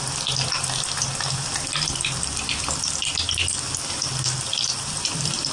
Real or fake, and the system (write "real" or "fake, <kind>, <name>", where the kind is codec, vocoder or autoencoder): real